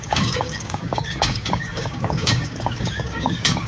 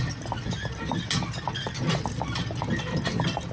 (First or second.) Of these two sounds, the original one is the second